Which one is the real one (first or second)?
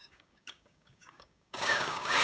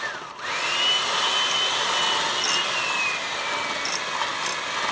second